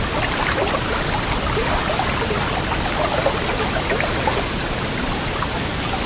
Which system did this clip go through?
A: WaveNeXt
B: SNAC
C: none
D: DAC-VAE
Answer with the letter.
C